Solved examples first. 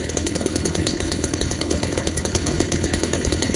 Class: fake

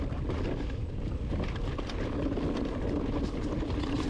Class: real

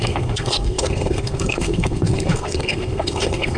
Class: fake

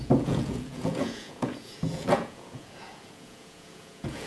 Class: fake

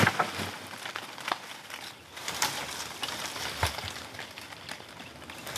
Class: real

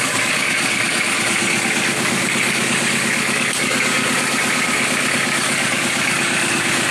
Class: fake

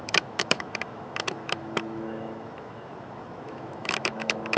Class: fake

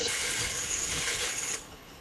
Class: fake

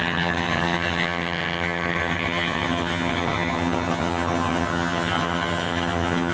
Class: fake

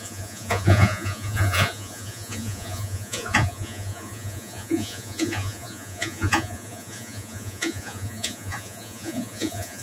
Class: fake